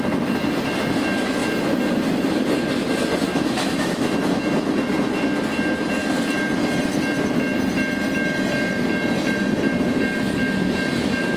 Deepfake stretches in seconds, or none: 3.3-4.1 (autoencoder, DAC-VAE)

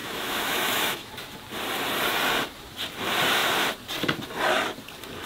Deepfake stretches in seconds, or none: 0.0-1.1 (autoencoder, DAC-VAE)

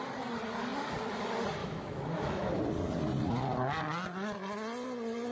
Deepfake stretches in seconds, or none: 1.6-2.6 (autoencoder, DAC-VAE)

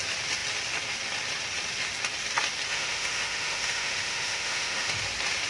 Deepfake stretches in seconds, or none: 2.7-5.0 (autoencoder, DAC-VAE)